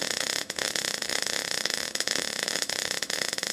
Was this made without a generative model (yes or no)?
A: no